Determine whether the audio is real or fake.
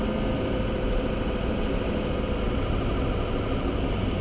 real